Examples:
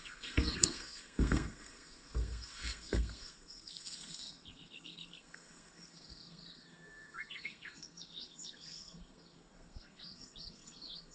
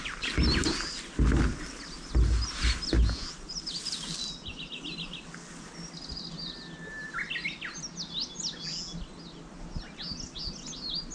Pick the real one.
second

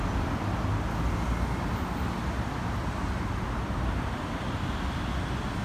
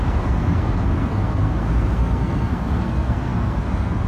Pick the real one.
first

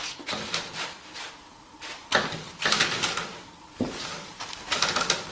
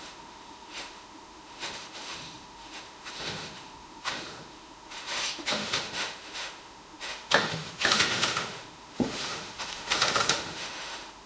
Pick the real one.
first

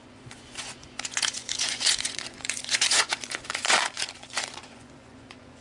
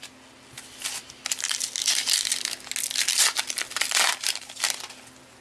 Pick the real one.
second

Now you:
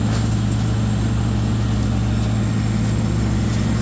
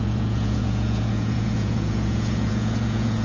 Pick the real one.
first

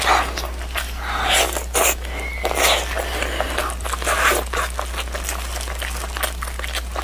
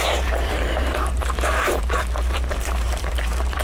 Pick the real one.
first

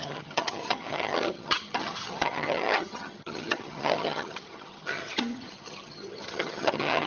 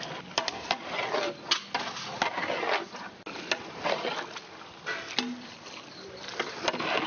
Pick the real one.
second